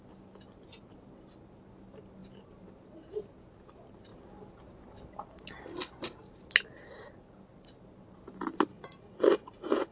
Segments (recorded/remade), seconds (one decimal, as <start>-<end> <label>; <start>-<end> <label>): 0.0-8.7 recorded; 8.7-9.9 remade